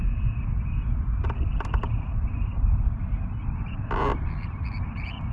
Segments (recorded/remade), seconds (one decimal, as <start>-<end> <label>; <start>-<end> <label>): 0.0-5.3 recorded